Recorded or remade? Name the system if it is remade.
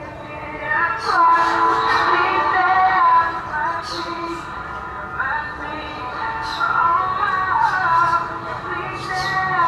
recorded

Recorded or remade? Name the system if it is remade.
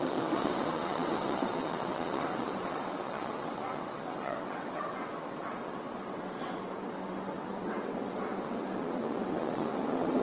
remade, vocoder, WaveNeXt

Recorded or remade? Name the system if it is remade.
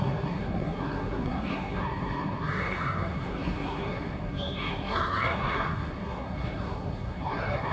remade, codec, SNAC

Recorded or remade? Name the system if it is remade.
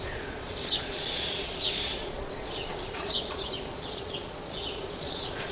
remade, vocoder, Vocos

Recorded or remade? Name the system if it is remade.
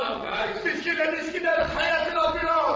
remade, vocoder, WaveNeXt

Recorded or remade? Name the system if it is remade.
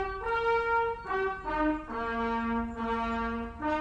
recorded